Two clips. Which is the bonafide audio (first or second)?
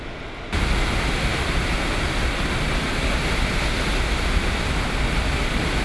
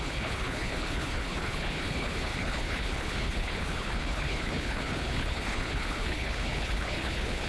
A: first